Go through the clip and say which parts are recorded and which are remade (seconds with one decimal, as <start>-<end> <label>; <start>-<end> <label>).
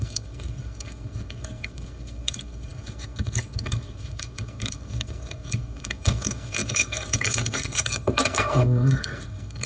0.0-9.7 remade